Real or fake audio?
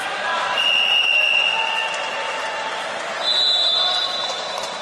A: real